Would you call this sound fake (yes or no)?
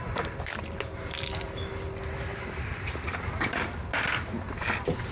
no